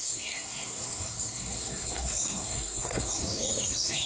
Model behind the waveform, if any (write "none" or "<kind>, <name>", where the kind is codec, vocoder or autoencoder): codec, SNAC